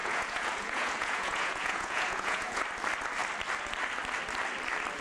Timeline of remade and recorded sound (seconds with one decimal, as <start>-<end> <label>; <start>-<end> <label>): 0.0-2.6 remade; 2.6-5.0 recorded